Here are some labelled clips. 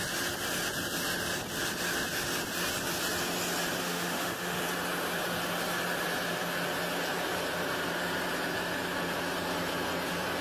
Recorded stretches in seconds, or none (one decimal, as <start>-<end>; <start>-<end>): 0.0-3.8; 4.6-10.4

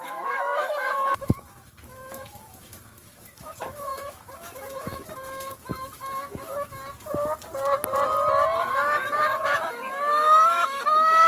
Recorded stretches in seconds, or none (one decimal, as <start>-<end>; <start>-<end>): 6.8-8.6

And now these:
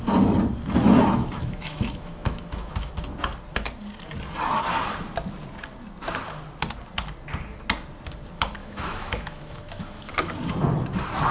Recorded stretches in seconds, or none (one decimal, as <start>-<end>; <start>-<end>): 0.0-0.8; 2.9-8.6; 10.1-11.3

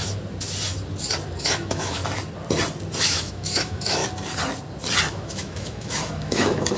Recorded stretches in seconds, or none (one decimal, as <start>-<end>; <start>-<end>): 0.0-1.4; 2.0-3.0; 4.0-5.1

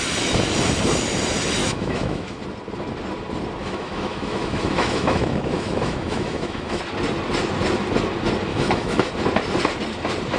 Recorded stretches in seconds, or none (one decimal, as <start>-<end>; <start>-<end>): 0.0-1.6; 2.4-3.6; 6.8-8.5; 9.1-10.4